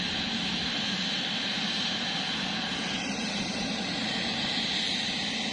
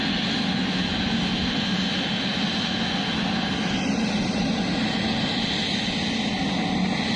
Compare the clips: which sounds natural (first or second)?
second